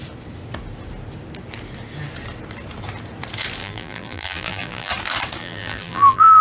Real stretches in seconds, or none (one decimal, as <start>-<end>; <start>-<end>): 0.0-3.6; 4.9-5.4